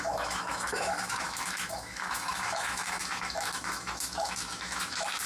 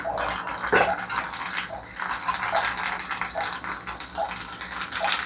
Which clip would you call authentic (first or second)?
second